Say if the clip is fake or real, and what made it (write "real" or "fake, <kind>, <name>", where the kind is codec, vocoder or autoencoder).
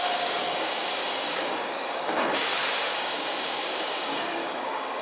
fake, codec, DAC